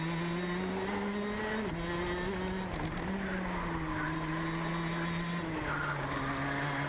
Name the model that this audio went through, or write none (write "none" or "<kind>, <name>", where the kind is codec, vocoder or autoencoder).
none